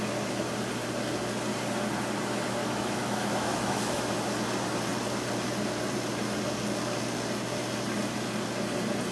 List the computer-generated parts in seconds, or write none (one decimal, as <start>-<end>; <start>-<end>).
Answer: 2.6-4.1